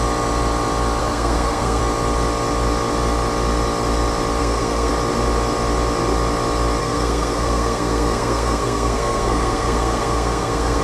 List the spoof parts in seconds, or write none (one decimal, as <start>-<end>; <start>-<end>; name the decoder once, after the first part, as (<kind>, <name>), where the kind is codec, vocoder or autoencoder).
1.0-1.8 (codec, SNAC); 4.4-4.9; 6.8-10.8